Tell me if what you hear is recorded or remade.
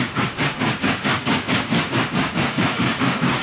remade